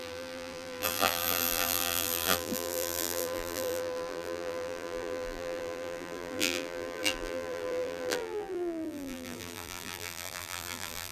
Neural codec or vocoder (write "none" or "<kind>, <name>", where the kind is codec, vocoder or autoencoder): vocoder, BigVGAN v2